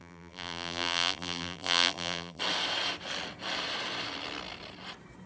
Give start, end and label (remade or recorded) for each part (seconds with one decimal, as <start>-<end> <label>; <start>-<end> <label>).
0.0-2.4 remade; 2.4-5.3 recorded

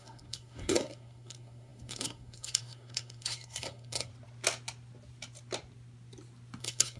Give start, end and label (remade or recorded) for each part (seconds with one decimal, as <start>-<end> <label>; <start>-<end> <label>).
0.0-4.1 remade; 4.1-6.6 recorded; 6.6-7.0 remade